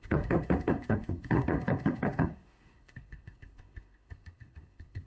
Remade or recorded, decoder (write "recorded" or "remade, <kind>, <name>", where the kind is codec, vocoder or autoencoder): remade, codec, SNAC